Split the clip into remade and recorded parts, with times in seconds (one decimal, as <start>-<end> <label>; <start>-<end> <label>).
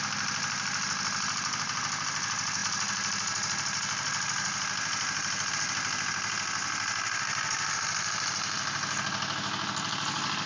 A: 0.0-10.5 recorded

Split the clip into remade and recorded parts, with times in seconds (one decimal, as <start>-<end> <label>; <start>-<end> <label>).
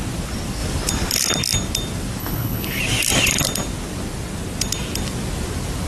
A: 0.0-2.2 recorded; 2.2-2.8 remade; 2.8-5.9 recorded